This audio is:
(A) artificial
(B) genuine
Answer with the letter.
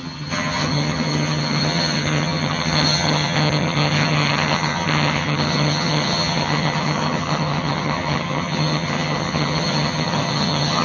A